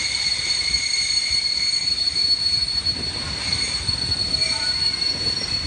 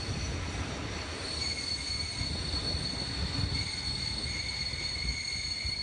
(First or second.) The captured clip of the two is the second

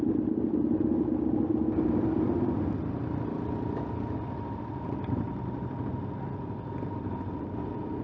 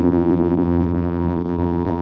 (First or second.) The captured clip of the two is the first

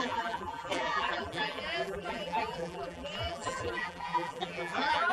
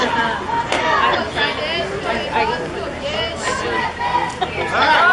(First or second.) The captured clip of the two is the second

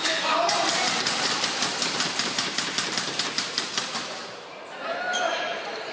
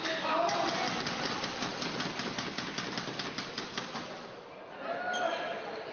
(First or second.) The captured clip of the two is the second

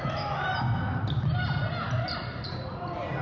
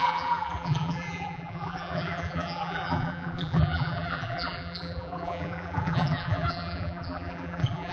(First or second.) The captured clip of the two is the first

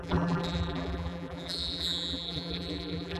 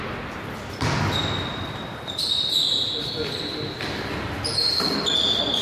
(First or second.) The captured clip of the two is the second